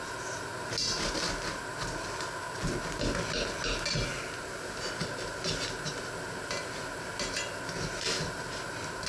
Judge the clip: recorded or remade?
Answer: recorded